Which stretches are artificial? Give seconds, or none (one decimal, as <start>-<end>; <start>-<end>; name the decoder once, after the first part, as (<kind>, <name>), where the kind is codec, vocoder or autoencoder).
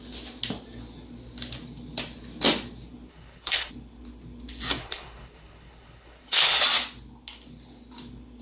3.1-3.7 (codec, HILCodec); 4.8-6.6